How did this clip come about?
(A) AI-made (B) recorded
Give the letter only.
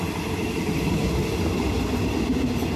B